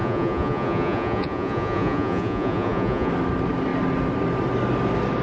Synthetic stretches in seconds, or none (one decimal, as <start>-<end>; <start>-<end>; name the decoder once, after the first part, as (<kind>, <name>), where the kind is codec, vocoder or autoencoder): 0.0-3.1 (vocoder, Vocos)